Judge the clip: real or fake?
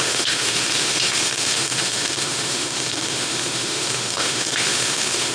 fake